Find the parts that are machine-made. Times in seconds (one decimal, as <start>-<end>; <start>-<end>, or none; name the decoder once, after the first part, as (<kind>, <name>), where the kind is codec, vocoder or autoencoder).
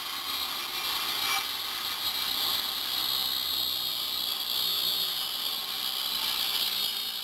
none